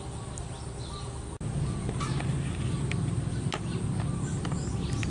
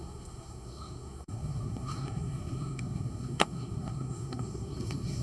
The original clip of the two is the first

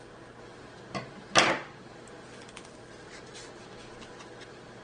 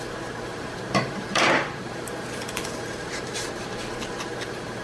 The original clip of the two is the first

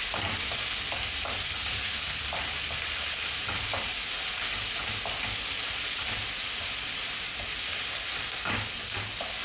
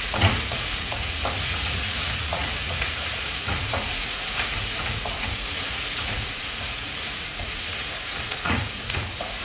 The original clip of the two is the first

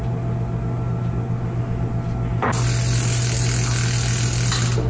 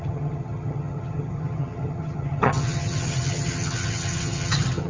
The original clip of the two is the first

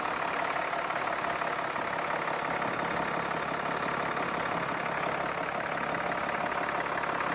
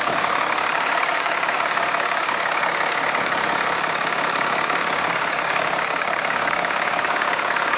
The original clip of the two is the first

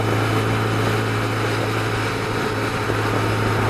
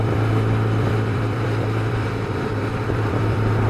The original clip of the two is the first